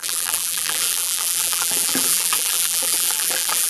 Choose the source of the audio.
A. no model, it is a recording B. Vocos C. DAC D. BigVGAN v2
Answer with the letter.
D